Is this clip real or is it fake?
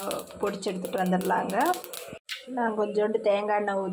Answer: real